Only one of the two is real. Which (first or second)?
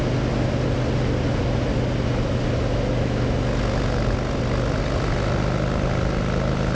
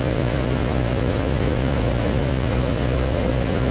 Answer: first